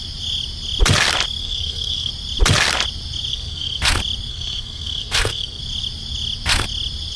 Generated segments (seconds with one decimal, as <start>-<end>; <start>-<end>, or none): 1.4-2.1; 3.3-3.8; 4.3-5.6